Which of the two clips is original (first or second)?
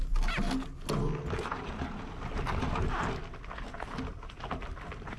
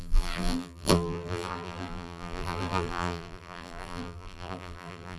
first